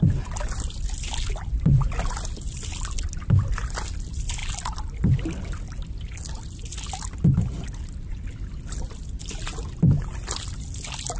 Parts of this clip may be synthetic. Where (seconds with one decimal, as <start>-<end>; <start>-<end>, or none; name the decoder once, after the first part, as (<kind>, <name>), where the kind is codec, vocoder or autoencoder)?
none